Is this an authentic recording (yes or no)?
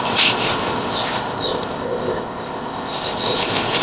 no